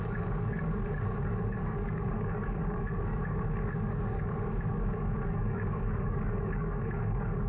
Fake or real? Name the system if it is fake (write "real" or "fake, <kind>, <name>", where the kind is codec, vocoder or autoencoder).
fake, codec, DAC